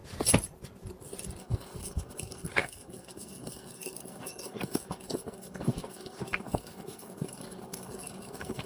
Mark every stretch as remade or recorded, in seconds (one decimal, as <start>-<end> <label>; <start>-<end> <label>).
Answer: 0.0-1.4 recorded; 1.4-8.7 remade